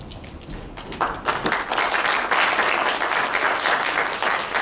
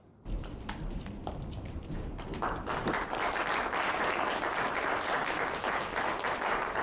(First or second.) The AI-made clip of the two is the second